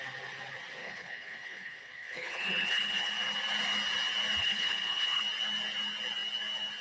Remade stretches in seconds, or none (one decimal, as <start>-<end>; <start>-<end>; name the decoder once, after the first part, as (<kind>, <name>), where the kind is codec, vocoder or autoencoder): 0.8-3.1 (codec, HILCodec); 4.4-5.2